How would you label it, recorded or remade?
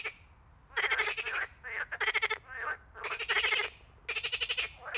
recorded